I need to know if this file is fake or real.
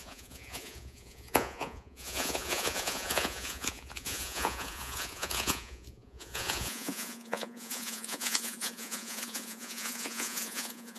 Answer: fake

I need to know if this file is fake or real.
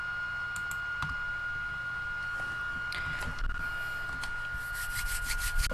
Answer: real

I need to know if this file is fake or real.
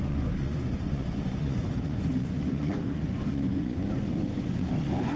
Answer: fake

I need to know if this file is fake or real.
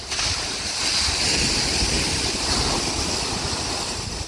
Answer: real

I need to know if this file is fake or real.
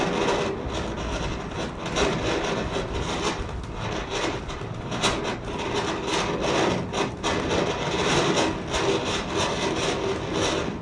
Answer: real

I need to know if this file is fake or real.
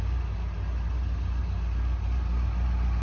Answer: real